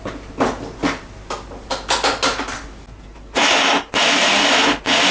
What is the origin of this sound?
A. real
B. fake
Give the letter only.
A